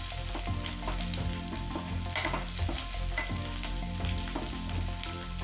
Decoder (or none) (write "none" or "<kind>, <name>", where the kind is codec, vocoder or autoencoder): none